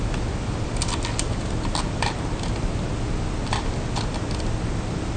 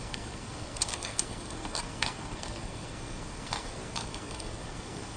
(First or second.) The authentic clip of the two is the first